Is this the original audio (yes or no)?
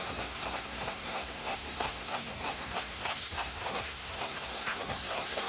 no